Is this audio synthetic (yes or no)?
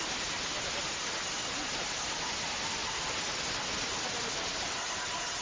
no